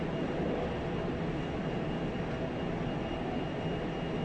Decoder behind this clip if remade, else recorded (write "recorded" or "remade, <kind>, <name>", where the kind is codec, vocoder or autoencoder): recorded